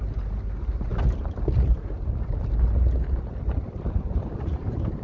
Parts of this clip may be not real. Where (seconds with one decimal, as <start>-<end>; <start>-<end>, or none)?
0.9-2.0